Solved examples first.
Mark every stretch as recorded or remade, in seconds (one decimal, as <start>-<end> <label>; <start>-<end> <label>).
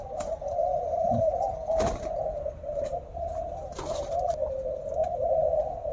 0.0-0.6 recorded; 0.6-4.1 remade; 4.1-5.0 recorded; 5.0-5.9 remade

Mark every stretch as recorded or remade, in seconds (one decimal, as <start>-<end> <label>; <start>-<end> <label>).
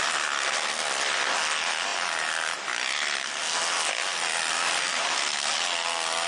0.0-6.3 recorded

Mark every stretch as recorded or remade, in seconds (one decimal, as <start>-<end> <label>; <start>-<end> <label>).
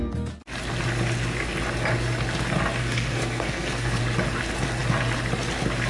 0.0-2.8 recorded; 2.8-4.0 remade; 4.0-5.9 recorded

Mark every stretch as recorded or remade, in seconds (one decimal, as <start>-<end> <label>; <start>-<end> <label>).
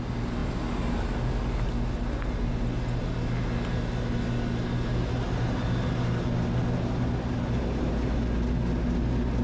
0.0-9.4 recorded